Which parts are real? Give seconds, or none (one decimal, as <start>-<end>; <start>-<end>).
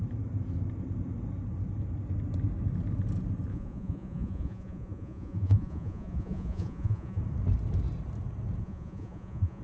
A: 0.0-3.5; 7.2-8.6